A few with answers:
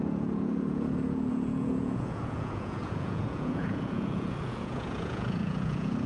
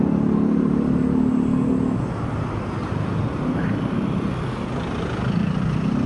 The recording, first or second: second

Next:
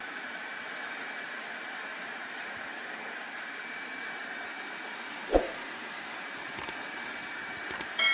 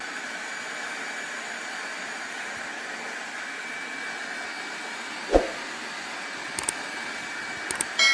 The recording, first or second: second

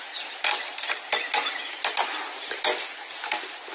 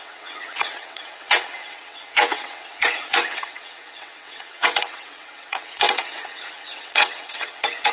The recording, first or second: first